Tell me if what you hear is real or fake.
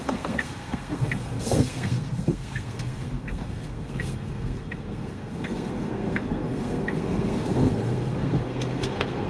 fake